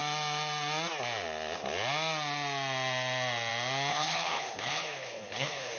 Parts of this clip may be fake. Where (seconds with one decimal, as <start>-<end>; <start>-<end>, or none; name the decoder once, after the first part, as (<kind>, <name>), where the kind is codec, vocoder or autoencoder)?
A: 3.9-5.8 (codec, HILCodec)

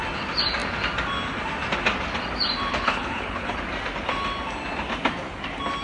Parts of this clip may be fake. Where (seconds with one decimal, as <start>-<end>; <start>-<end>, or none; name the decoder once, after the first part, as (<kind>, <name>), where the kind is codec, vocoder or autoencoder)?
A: 2.7-3.6 (codec, HILCodec)